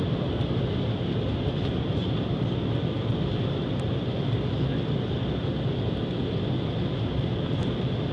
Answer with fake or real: real